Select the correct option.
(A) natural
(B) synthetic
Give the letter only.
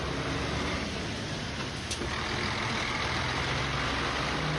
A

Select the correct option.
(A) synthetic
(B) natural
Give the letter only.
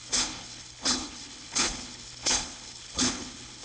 A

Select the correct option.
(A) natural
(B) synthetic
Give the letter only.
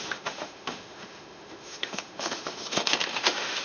B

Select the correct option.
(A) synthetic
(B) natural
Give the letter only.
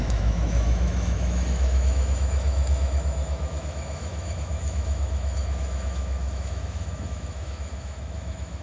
A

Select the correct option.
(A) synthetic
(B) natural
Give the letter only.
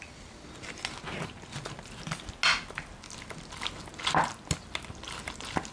B